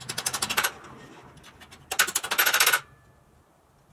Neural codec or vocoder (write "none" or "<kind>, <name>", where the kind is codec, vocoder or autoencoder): none